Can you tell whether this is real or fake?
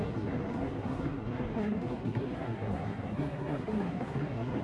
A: fake